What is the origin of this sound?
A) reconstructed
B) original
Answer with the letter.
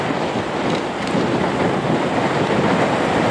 B